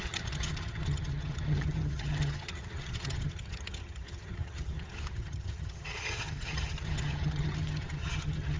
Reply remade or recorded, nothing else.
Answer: remade